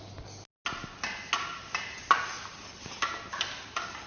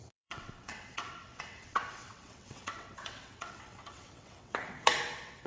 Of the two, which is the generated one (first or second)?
second